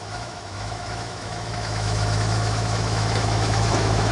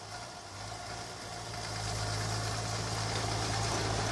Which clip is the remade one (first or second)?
first